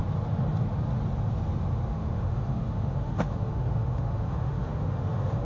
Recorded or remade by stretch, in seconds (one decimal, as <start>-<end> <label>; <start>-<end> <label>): 0.0-1.9 recorded; 1.9-5.4 remade

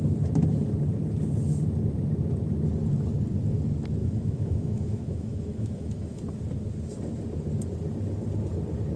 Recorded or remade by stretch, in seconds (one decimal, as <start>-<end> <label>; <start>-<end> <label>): 0.0-4.0 recorded; 4.0-6.2 remade; 6.2-9.0 recorded

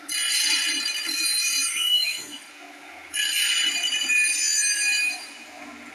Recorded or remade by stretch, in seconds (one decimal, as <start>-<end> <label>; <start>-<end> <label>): 0.0-1.7 recorded; 1.7-2.5 remade; 2.5-5.9 recorded

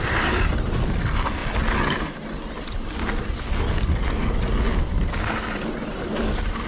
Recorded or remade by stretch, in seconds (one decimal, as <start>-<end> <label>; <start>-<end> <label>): 0.0-6.7 recorded